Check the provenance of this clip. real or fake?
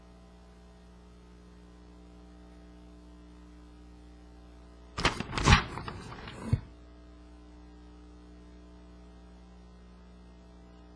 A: real